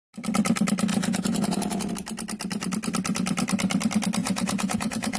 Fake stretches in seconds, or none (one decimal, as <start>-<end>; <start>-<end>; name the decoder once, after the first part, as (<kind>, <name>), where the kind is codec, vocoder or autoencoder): 0.9-1.9 (vocoder, Vocos); 4.2-5.2